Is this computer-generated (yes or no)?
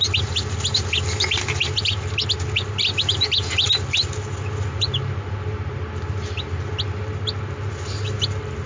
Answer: no